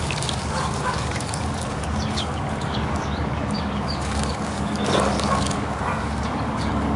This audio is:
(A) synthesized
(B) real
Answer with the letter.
A